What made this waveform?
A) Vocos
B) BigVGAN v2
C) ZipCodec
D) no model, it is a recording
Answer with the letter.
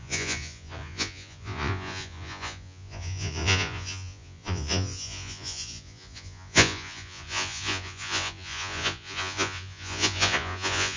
A